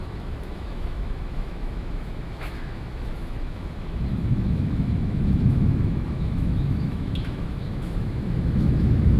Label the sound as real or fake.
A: fake